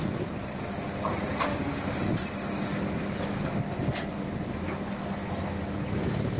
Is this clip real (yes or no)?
yes